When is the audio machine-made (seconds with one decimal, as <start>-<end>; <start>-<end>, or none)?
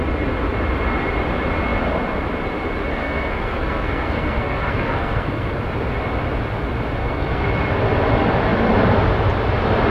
2.9-5.6; 7.0-7.5